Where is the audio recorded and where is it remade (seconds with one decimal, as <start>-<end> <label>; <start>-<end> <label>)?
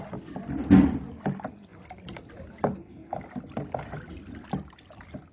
0.0-5.3 recorded